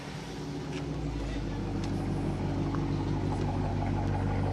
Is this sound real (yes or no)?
yes